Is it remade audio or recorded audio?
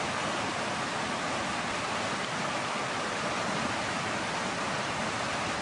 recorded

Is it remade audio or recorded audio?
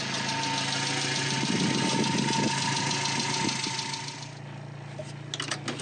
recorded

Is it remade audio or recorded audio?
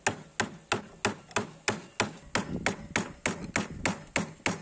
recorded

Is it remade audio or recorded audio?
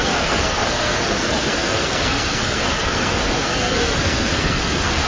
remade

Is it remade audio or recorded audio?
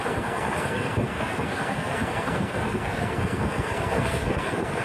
remade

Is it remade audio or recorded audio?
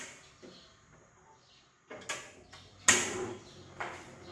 recorded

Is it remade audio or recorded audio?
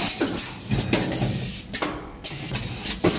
recorded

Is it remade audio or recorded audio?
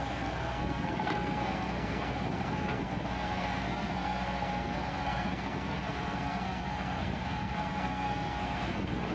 remade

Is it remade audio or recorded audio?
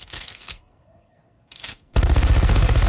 remade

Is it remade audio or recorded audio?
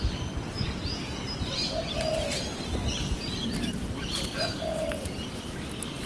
recorded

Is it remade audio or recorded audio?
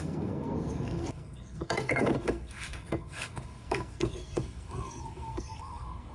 remade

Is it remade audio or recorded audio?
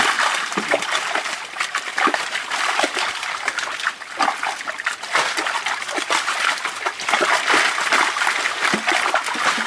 recorded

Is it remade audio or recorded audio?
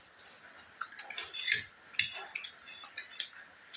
recorded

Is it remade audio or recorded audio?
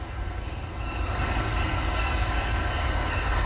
remade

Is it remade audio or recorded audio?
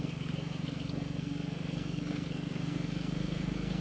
remade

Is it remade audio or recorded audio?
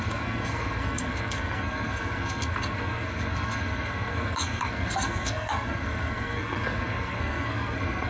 remade